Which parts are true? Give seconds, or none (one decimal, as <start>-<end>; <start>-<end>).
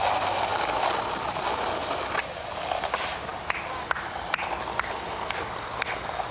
0.0-6.3